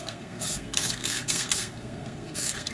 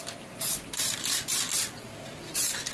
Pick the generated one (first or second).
first